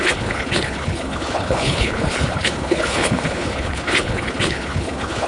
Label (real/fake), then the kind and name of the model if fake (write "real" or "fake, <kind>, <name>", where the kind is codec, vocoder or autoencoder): fake, codec, HILCodec